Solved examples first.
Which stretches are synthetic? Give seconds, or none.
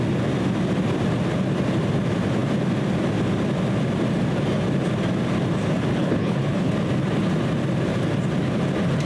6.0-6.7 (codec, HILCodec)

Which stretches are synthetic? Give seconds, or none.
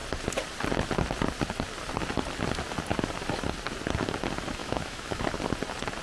4.6-5.2 (autoencoder, DAC-VAE)